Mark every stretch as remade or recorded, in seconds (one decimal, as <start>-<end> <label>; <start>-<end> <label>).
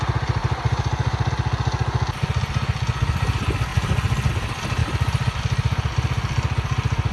0.0-0.4 recorded; 0.4-1.3 remade; 1.3-7.1 recorded